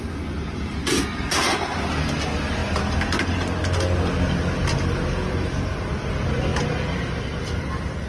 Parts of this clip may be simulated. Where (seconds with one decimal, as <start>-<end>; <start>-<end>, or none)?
none